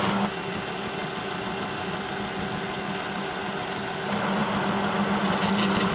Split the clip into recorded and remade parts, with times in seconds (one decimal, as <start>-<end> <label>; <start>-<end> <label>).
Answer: 0.0-5.9 recorded